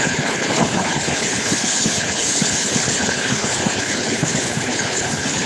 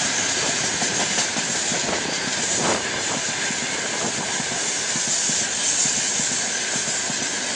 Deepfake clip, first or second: first